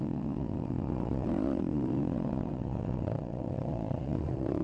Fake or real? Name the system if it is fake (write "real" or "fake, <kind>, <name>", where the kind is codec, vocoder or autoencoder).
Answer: fake, vocoder, Vocos